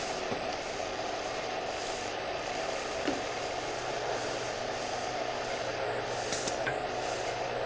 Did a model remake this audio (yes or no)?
no